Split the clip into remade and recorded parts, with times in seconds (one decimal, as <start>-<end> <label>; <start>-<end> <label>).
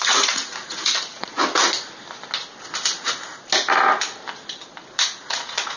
0.0-1.4 remade; 1.4-4.9 recorded; 4.9-5.8 remade